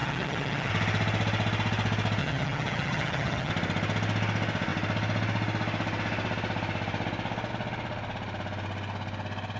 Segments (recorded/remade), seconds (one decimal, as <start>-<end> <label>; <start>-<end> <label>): 0.0-0.7 remade; 0.7-2.2 recorded; 2.2-3.5 remade; 3.5-9.6 recorded

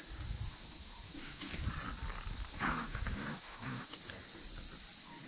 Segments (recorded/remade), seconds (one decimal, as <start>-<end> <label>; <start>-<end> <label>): 0.0-0.6 recorded; 0.6-1.5 remade; 1.5-2.5 recorded; 2.5-4.0 remade; 4.0-5.3 recorded

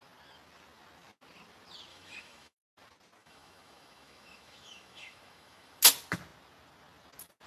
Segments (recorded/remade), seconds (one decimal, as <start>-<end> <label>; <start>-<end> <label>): 0.0-1.9 recorded; 1.9-2.7 remade; 2.7-3.2 recorded; 3.2-5.8 remade; 5.8-7.5 recorded

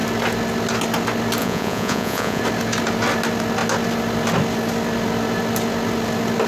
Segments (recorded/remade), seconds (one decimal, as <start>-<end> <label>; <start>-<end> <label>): 0.0-1.4 recorded; 1.4-2.4 remade; 2.4-6.5 recorded